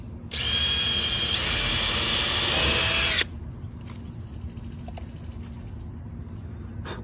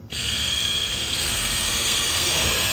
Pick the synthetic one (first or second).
second